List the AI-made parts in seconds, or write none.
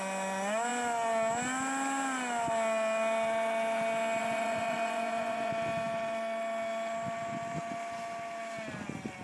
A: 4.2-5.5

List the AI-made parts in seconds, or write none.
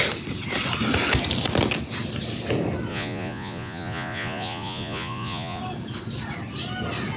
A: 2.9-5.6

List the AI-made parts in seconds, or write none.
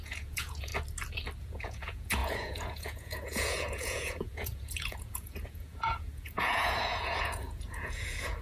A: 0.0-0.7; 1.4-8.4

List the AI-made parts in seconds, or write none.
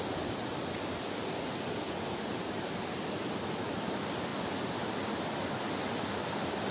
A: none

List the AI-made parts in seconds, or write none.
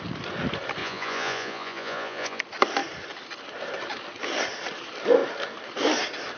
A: 0.8-2.4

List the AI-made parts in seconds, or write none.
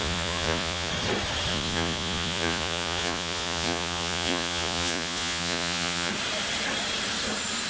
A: 0.0-0.9; 1.5-6.1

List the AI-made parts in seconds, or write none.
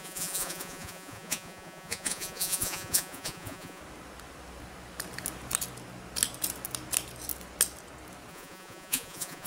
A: 0.0-3.8; 8.3-9.5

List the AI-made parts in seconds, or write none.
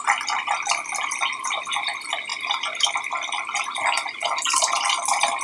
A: none